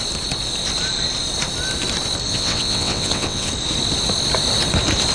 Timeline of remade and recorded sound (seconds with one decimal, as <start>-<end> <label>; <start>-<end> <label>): 0.0-2.3 recorded; 2.3-3.5 remade; 3.5-5.1 recorded